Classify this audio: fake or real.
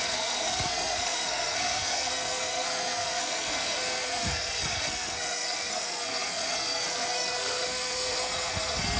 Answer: fake